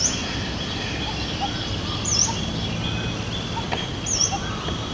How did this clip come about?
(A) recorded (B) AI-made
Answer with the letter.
A